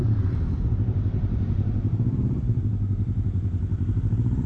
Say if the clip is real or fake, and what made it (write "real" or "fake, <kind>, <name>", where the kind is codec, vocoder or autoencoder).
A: fake, vocoder, BigVGAN v2